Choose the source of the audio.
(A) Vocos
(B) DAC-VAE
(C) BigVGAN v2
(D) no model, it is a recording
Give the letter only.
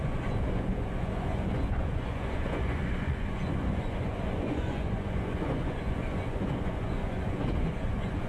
A